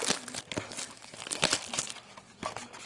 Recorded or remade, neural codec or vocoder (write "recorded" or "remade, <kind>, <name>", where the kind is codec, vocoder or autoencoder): recorded